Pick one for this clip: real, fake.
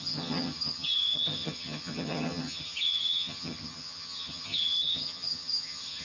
fake